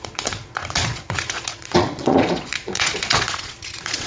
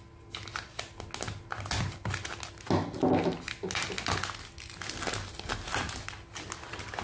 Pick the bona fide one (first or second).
second